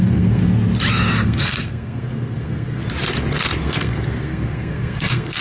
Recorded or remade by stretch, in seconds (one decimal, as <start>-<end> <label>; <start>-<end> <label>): 0.0-0.4 remade; 0.4-0.9 recorded; 0.9-2.8 remade; 2.8-3.6 recorded; 3.6-5.4 remade